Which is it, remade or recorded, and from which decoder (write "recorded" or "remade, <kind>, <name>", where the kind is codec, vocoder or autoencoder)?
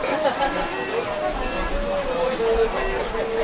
recorded